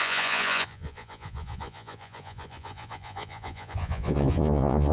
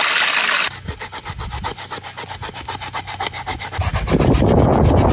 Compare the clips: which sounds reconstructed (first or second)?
first